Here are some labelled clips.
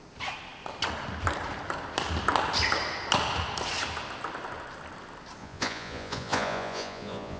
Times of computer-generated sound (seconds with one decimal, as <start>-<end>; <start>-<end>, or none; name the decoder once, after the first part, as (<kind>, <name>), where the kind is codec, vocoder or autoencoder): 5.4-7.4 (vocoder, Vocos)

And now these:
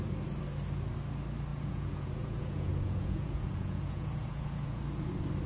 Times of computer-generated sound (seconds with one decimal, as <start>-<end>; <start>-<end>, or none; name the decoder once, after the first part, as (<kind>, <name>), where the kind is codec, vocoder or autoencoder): 1.5-4.8 (vocoder, Vocos)

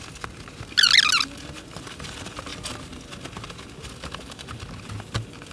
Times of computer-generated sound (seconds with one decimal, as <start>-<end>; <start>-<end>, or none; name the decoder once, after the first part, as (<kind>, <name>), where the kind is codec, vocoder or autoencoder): none